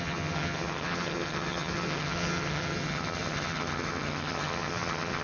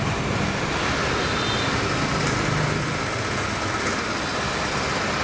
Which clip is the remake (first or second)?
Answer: first